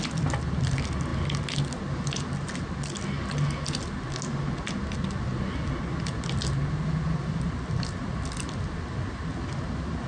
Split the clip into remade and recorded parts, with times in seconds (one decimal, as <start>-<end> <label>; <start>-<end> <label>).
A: 0.0-10.1 recorded